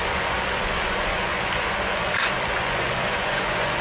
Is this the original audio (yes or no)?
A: no